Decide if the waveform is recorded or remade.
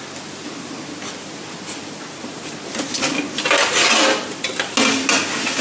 recorded